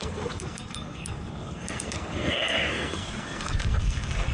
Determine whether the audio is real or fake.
fake